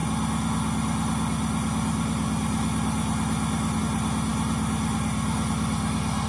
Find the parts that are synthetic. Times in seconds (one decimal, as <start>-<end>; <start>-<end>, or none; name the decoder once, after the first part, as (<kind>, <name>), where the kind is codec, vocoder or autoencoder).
none